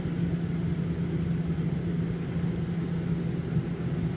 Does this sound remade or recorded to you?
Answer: recorded